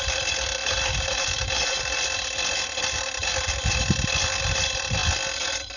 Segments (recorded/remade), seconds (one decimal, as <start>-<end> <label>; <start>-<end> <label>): 0.0-0.6 recorded; 0.6-1.8 remade; 1.8-5.8 recorded